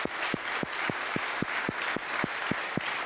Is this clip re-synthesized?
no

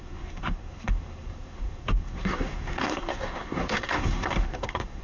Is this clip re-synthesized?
yes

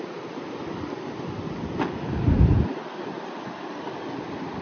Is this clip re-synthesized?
yes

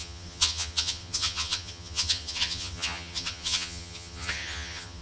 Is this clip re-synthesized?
yes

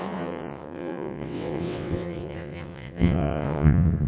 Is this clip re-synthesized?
yes